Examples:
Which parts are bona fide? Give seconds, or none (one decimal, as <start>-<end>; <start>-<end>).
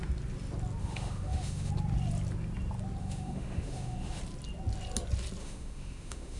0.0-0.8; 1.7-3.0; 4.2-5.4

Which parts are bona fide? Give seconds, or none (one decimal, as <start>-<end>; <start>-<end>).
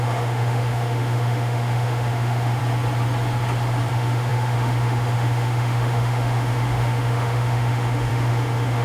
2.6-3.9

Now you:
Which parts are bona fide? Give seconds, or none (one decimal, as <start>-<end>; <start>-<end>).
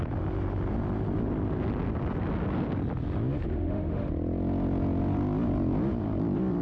0.0-3.5; 4.1-6.6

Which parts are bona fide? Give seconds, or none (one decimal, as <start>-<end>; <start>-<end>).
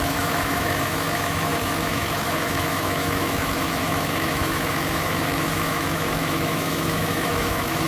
none